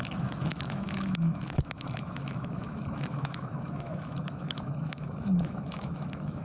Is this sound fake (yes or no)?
yes